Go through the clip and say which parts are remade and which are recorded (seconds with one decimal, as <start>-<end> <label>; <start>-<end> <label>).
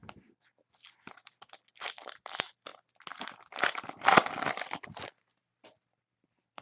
0.0-2.0 recorded; 2.0-2.7 remade; 2.7-4.9 recorded; 4.9-6.6 remade